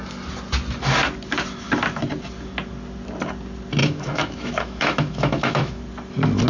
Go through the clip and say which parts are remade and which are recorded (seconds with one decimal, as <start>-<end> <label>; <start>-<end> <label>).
0.0-3.8 recorded; 3.8-5.8 remade; 5.8-6.5 recorded